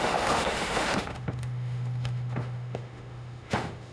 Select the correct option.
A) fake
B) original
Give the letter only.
A